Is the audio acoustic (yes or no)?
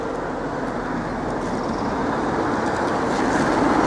yes